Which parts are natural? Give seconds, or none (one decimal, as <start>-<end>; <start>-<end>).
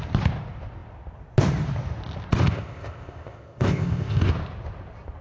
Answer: 0.0-2.4; 4.3-5.2